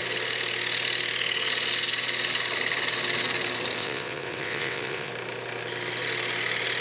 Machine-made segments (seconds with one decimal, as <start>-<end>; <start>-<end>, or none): 3.8-5.1

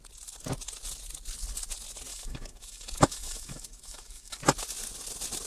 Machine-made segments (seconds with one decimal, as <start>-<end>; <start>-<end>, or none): 2.1-4.4

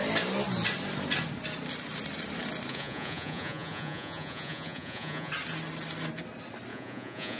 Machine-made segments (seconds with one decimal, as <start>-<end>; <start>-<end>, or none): 2.7-5.3; 6.7-7.4

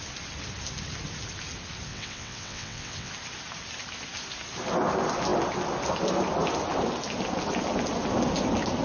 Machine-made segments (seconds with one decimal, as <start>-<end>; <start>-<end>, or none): 1.9-3.1

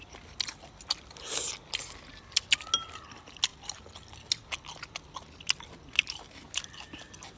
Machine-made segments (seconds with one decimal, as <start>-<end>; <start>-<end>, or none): none